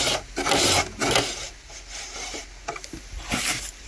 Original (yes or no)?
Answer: yes